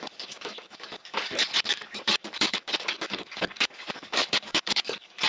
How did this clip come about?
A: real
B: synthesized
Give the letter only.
B